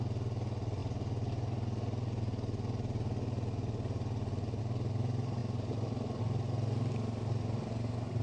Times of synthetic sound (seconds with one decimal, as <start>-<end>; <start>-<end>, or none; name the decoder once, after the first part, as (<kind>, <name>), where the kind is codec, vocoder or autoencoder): none